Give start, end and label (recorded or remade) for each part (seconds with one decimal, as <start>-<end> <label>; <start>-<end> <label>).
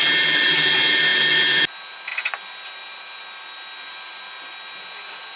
0.0-5.4 recorded